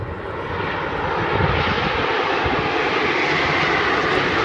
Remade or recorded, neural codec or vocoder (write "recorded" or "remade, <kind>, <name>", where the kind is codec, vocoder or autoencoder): recorded